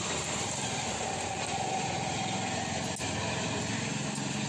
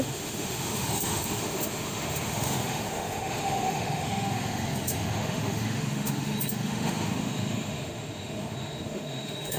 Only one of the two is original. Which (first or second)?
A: first